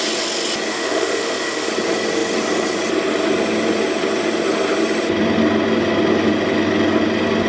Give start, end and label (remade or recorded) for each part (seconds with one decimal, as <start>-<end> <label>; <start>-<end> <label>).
0.0-0.7 recorded; 0.7-1.7 remade; 1.7-7.5 recorded